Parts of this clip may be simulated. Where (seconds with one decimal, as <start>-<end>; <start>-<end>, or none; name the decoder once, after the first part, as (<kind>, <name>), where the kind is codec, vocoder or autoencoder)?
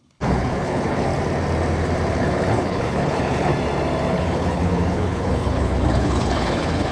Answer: 0.0-1.1 (codec, HILCodec); 2.1-3.5; 4.1-6.9